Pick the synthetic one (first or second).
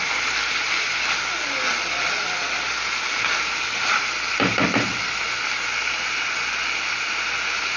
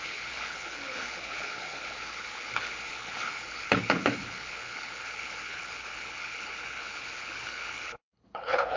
second